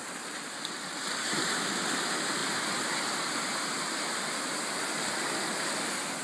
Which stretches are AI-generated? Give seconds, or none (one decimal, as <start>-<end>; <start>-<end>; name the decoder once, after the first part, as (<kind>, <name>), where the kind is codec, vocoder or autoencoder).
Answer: none